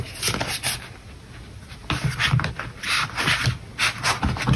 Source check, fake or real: real